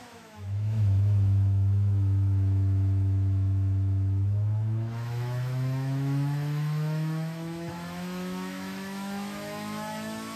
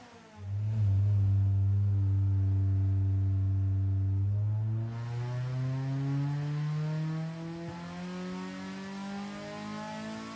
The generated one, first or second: first